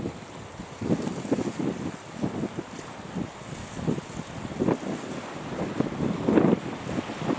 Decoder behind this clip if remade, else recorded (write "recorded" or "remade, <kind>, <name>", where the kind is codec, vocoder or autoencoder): recorded